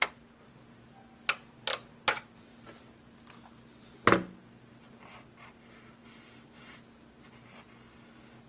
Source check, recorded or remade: recorded